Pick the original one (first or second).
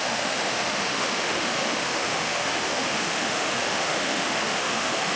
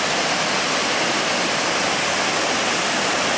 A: second